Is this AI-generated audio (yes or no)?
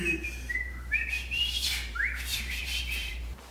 yes